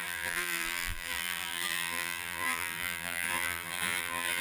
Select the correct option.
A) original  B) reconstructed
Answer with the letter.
B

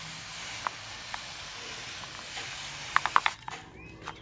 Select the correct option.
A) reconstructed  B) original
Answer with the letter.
B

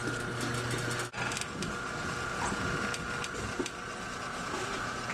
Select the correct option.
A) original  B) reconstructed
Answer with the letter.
A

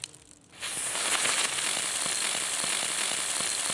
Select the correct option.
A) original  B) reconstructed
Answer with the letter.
A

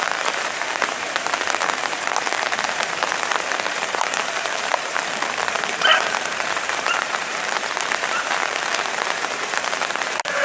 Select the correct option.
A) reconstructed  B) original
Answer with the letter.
A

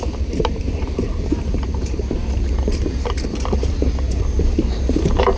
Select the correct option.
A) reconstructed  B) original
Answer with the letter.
A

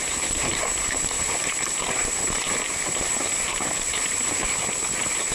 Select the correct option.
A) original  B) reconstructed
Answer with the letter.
B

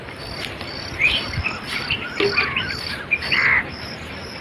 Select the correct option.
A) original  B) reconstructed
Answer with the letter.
B